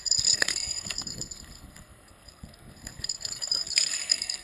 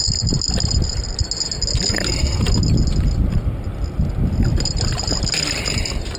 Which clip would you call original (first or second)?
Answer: second